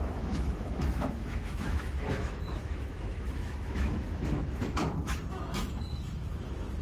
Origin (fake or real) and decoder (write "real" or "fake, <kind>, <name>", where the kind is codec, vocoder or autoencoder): fake, autoencoder, DAC-VAE